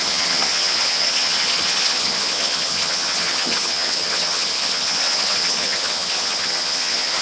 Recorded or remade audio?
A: remade